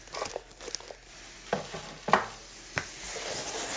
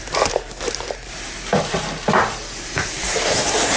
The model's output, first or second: second